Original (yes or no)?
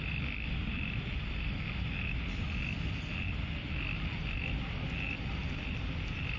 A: yes